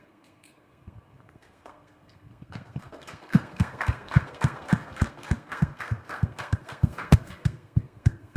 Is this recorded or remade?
remade